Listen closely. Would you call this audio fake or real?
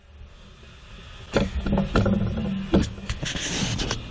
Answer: real